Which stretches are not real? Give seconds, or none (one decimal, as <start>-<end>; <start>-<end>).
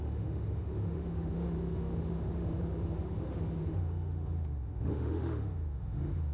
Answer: 0.0-6.3